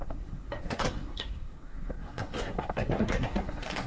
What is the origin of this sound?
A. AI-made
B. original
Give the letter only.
A